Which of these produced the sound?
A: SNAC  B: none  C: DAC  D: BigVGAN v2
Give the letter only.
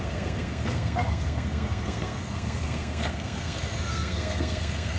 A